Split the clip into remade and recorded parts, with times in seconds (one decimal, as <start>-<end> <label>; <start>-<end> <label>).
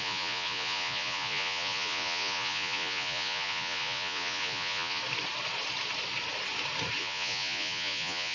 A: 0.0-5.0 remade; 5.0-7.0 recorded; 7.0-8.3 remade